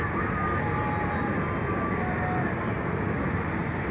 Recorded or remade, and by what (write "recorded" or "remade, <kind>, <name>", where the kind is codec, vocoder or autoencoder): recorded